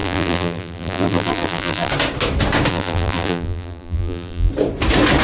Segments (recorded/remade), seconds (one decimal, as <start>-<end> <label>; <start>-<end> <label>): 0.0-1.9 remade; 1.9-2.7 recorded; 2.7-4.5 remade; 4.5-5.2 recorded